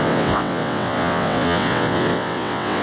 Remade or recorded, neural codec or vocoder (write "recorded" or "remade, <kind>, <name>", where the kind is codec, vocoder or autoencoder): remade, vocoder, WaveNeXt